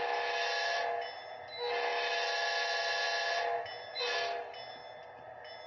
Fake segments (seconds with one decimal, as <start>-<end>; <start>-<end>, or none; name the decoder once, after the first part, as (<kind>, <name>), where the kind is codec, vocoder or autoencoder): none